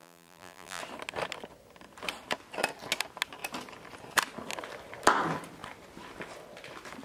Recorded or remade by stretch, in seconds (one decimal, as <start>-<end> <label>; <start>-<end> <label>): 0.0-0.8 remade; 0.8-7.0 recorded